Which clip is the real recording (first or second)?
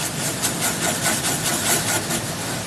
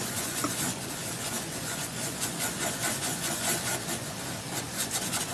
first